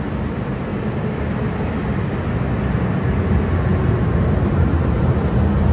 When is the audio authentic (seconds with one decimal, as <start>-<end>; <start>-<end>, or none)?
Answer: 0.0-5.7

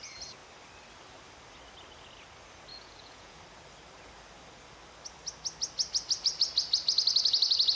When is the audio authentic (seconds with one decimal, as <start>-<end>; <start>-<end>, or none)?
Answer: 0.0-2.7; 3.4-7.8

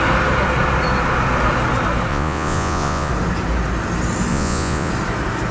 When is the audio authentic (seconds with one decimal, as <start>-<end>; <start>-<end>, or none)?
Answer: 0.0-2.1; 3.1-4.3; 4.9-5.5

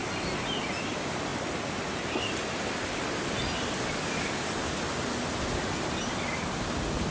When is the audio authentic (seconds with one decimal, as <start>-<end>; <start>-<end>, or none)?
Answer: 0.0-7.1

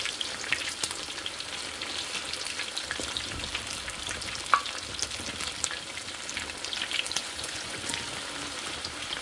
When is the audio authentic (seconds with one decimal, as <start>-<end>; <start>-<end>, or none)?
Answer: 0.0-7.2; 7.9-9.2